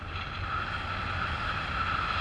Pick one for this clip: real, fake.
real